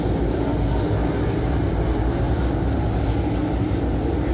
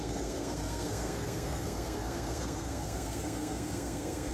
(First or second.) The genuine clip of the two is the first